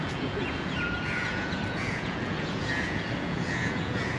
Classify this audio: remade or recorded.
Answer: remade